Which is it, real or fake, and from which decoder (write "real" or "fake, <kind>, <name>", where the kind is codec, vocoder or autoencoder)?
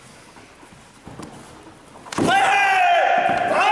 real